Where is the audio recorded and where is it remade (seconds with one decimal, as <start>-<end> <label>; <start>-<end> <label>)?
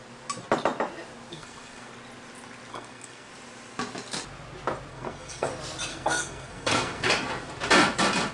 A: 0.0-1.3 recorded; 1.3-1.9 remade; 1.9-2.7 recorded; 2.7-3.3 remade; 3.3-4.9 recorded; 4.9-5.5 remade; 5.5-5.9 recorded; 5.9-7.1 remade; 7.1-8.3 recorded